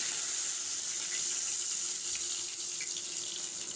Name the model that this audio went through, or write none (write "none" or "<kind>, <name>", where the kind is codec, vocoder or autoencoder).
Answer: none